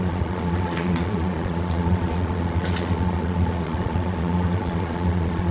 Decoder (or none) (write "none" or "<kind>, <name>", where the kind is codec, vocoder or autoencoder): vocoder, Vocos